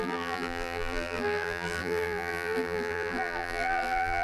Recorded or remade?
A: remade